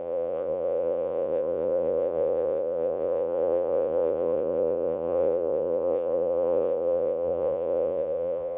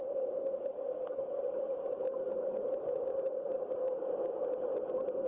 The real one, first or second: second